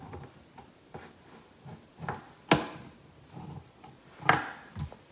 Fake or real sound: real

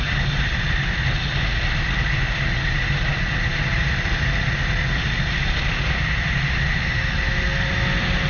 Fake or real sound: real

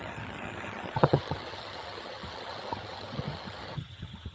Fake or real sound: fake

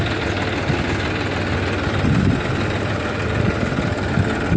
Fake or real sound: real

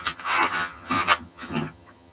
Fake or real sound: fake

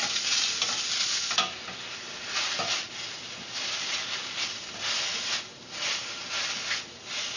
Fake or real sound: real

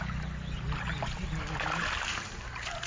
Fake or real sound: real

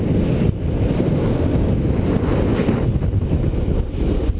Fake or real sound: real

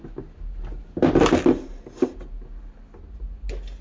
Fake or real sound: real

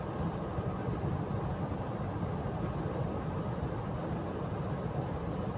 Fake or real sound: real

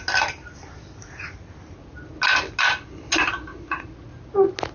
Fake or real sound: real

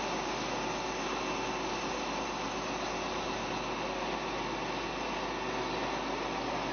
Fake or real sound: real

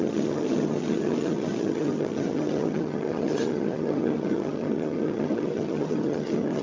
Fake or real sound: fake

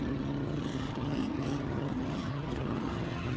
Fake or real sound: fake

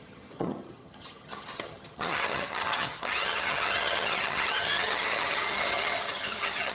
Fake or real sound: fake